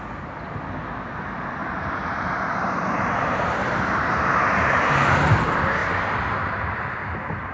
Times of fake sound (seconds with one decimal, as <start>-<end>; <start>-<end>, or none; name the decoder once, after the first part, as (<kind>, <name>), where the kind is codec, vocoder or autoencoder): 1.6-4.9 (vocoder, BigVGAN v2); 5.8-6.8